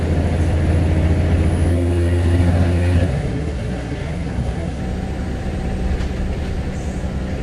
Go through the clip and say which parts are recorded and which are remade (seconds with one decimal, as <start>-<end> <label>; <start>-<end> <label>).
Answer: 0.0-1.7 recorded; 1.7-4.8 remade; 4.8-7.4 recorded